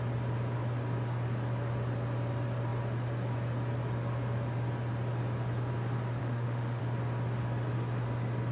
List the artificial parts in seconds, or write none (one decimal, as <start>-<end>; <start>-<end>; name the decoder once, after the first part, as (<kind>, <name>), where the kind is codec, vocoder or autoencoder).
6.2-6.8 (autoencoder, DAC-VAE)